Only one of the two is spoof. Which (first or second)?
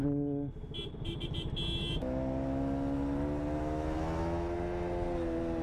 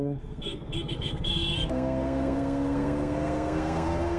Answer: second